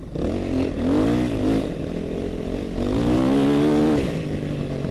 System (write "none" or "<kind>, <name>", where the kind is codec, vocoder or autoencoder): none